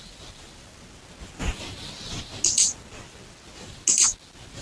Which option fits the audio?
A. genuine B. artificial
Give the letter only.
A